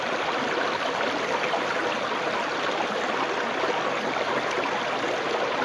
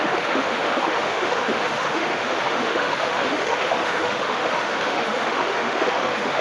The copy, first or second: second